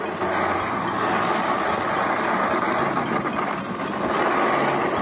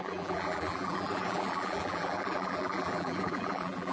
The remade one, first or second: second